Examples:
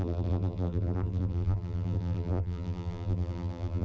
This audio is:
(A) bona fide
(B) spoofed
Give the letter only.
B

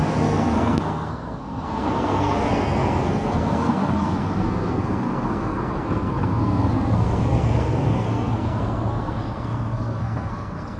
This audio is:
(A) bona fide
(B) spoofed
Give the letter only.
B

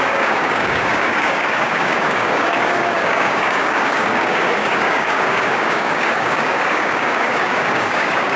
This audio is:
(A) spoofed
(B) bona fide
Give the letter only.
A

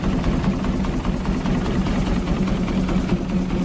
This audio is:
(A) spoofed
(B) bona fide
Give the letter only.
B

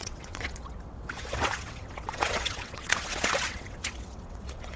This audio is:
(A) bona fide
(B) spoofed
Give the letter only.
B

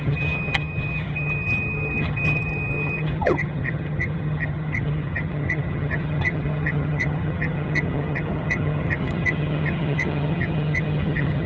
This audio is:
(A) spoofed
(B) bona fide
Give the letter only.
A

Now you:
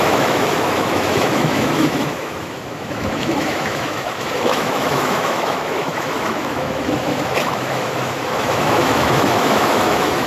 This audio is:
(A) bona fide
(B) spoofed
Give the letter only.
B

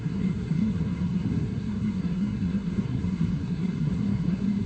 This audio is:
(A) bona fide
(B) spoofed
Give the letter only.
B